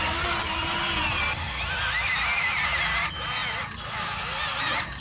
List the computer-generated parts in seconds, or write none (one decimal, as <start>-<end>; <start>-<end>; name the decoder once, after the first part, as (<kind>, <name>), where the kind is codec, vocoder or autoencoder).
0.4-1.2 (vocoder, BigVGAN v2)